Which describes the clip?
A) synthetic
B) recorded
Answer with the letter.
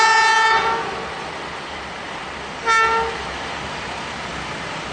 B